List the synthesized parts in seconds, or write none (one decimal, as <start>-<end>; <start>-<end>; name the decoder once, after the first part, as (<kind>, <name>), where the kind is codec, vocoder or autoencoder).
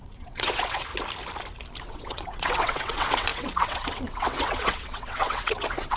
0.0-0.9 (vocoder, WaveNeXt); 1.8-6.0